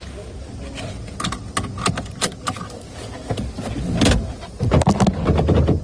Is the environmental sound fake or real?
real